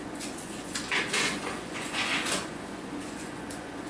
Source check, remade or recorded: remade